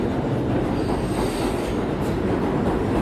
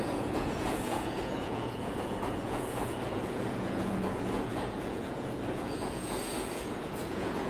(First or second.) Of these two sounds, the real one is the first